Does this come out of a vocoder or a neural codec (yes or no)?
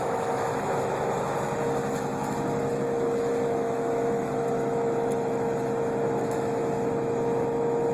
yes